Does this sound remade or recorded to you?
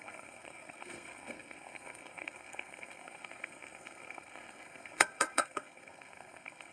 remade